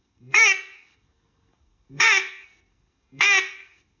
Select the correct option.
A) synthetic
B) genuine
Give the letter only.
A